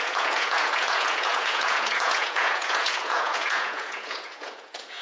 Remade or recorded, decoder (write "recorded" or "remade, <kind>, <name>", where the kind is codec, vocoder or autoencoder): remade, vocoder, Vocos